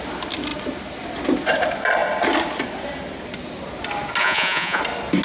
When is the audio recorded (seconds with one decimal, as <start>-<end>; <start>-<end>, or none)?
0.0-4.2; 4.8-5.2

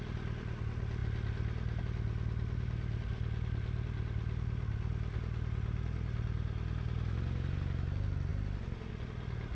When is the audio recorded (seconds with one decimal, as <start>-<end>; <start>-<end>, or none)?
0.0-9.6

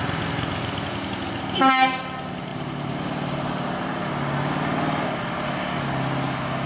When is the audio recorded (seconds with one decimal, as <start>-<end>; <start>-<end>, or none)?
0.0-2.5; 3.7-6.7

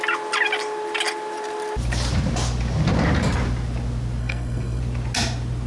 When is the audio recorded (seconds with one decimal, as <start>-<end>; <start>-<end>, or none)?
0.0-4.2; 4.8-5.7